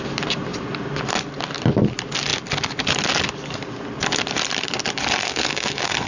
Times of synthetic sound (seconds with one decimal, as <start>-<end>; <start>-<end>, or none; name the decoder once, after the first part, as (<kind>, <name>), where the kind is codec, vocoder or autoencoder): 5.2-6.1 (codec, SNAC)